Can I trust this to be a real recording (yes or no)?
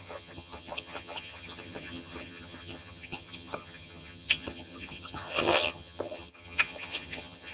no